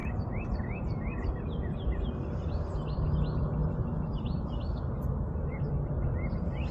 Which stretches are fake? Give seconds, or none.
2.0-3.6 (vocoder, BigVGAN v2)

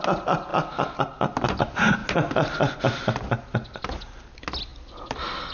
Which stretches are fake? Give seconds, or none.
none

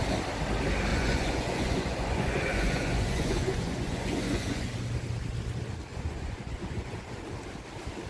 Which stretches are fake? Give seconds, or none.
0.9-4.7 (vocoder, Vocos); 5.9-7.1

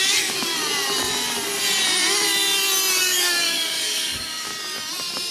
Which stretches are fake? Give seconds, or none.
0.0-0.5 (codec, DAC); 3.0-4.5